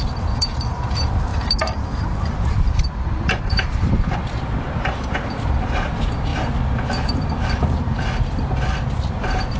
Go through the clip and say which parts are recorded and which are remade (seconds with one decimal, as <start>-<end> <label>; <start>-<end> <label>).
0.0-1.3 remade; 1.3-2.0 recorded; 2.0-6.3 remade; 6.3-7.1 recorded; 7.1-9.6 remade